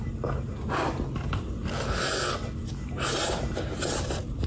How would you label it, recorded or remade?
recorded